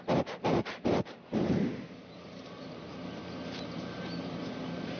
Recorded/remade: remade